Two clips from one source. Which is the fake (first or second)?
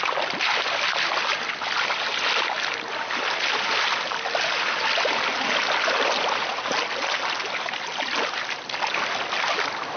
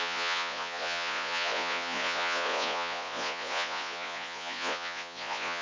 second